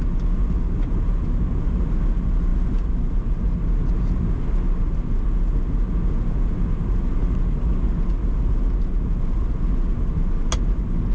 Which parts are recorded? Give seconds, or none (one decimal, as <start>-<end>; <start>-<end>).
0.0-11.1